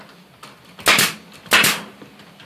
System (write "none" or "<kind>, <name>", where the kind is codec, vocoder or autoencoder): none